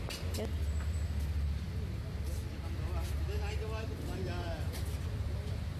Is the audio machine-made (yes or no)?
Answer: no